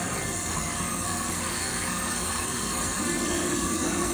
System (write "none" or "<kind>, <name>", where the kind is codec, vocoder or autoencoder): codec, SNAC